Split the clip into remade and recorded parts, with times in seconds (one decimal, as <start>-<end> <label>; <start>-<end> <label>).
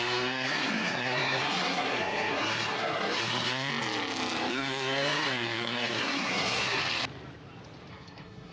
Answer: 0.0-3.7 remade; 3.7-4.5 recorded; 4.5-6.8 remade; 6.8-7.9 recorded; 7.9-8.5 remade